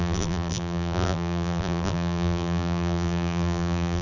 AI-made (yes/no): yes